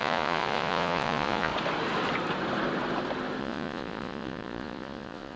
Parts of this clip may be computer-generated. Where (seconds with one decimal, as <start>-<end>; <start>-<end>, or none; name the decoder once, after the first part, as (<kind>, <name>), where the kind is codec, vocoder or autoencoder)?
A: 0.0-1.5 (vocoder, Vocos); 3.4-5.4